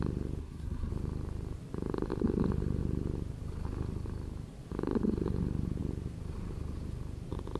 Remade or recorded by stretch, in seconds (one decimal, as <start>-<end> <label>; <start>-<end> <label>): 0.0-0.4 recorded; 0.4-0.9 remade; 0.9-7.6 recorded